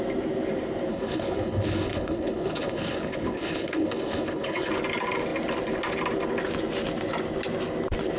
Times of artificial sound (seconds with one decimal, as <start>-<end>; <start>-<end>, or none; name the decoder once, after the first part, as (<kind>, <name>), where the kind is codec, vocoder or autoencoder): 0.9-4.7 (codec, HILCodec)